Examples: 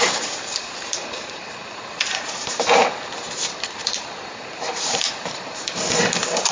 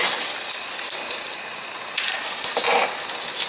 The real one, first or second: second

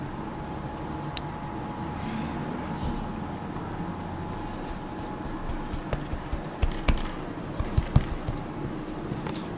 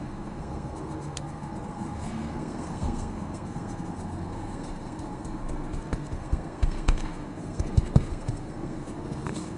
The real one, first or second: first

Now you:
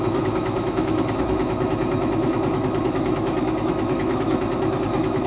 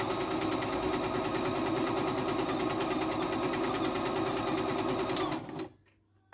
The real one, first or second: second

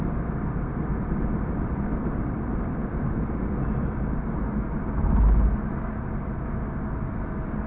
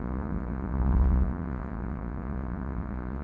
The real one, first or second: first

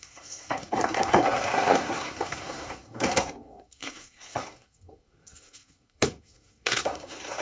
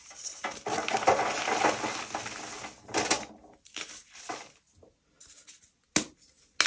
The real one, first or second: second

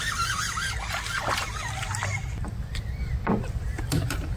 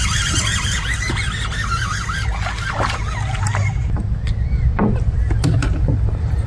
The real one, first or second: second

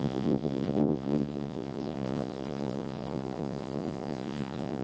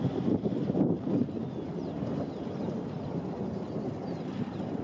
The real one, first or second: second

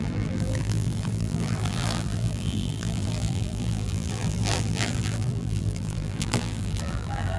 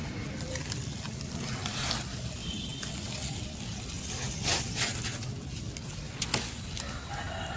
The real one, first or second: second